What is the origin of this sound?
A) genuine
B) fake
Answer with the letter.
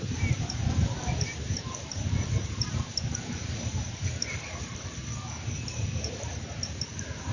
B